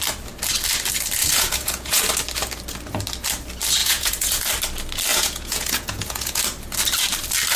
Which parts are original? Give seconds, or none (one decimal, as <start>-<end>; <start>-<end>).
0.0-1.2; 2.0-3.8; 4.4-5.1; 6.4-7.6